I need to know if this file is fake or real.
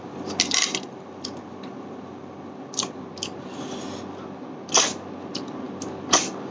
real